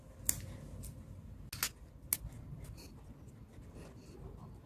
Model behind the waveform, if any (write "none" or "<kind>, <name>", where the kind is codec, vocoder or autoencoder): none